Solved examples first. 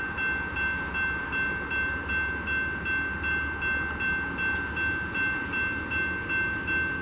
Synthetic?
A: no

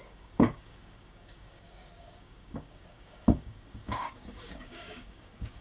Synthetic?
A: yes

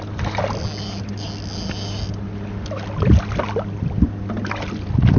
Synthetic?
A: no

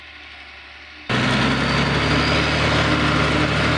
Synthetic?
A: no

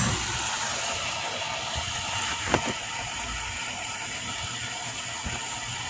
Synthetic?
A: no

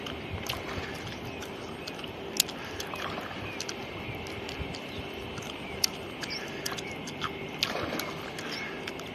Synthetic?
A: no